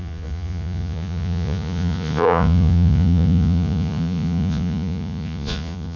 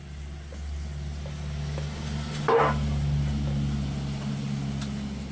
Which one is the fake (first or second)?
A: first